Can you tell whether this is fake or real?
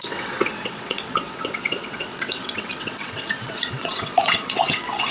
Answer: fake